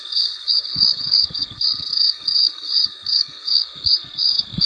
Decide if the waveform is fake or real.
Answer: fake